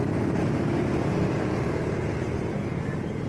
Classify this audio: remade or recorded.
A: recorded